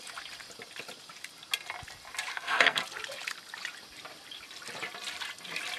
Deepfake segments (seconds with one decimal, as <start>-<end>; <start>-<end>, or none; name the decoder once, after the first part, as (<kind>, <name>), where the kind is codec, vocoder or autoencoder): 2.3-2.8 (codec, SNAC)